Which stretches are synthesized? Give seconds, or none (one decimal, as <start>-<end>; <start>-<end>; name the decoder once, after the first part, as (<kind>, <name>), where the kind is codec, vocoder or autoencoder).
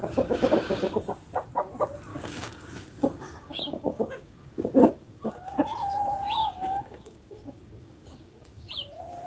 0.0-1.0 (codec, DAC); 2.1-5.3; 6.4-8.7